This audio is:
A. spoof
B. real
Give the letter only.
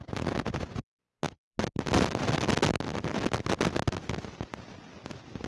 B